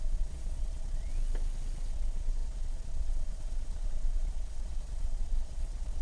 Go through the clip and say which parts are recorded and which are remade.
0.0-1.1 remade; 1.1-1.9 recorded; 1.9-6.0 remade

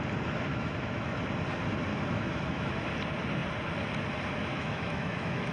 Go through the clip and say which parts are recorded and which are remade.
0.0-0.5 recorded; 0.5-1.2 remade; 1.2-1.9 recorded; 1.9-2.8 remade; 2.8-4.5 recorded; 4.5-5.5 remade

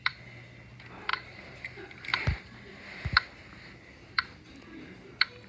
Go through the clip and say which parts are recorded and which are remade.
0.0-1.1 recorded; 1.1-1.6 remade; 1.6-5.5 recorded

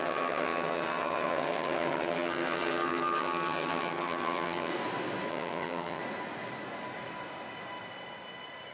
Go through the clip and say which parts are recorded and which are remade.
0.0-4.7 remade; 4.7-5.3 recorded; 5.3-6.0 remade; 6.0-8.7 recorded

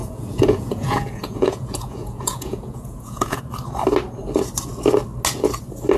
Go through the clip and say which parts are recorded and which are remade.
0.0-3.4 remade; 3.4-6.0 recorded

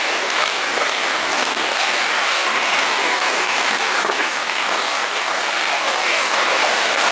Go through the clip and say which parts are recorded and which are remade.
0.0-7.1 remade

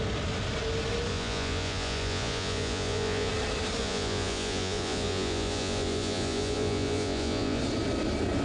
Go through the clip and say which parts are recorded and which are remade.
0.0-1.1 recorded; 1.1-3.3 remade; 3.3-3.8 recorded; 3.8-7.6 remade; 7.6-8.4 recorded

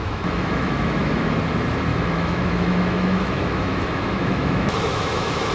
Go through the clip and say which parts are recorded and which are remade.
0.0-1.4 remade; 1.4-1.9 recorded; 1.9-5.5 remade